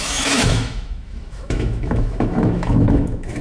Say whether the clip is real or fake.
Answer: fake